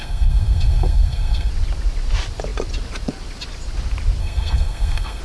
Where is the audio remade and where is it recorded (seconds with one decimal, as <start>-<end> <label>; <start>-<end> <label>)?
0.0-1.5 remade; 1.5-4.2 recorded; 4.2-5.2 remade